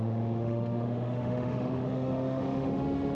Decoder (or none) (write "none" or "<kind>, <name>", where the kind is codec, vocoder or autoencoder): autoencoder, DAC-VAE